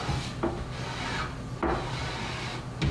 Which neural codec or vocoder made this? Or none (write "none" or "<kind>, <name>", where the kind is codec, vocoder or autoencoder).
none